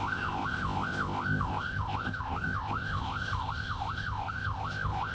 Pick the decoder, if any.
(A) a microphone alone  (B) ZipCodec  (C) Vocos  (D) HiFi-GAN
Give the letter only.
B